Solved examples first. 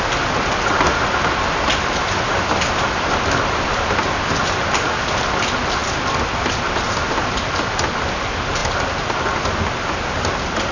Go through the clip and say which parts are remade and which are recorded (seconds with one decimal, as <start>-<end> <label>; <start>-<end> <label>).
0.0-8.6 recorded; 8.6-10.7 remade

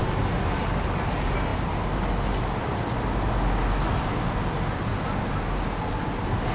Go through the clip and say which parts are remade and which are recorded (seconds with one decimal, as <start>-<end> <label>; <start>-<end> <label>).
0.0-6.5 recorded

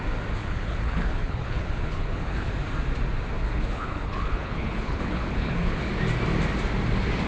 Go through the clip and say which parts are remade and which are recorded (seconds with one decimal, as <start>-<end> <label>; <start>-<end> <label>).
0.0-0.4 recorded; 0.4-2.5 remade; 2.5-3.4 recorded; 3.4-5.9 remade; 5.9-7.3 recorded

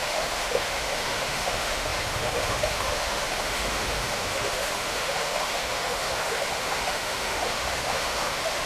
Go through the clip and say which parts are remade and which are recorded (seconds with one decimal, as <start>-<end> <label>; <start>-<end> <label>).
0.0-8.7 remade

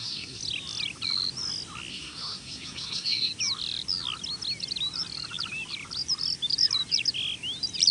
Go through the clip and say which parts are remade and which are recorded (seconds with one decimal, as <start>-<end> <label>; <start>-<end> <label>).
0.0-0.4 remade; 0.4-1.9 recorded; 1.9-3.3 remade; 3.3-7.9 recorded

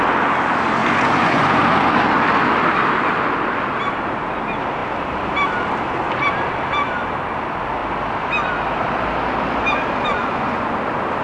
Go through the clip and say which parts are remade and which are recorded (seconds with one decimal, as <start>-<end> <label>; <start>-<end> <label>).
0.0-0.8 recorded; 0.8-1.8 remade; 1.8-10.1 recorded; 10.1-10.7 remade; 10.7-11.2 recorded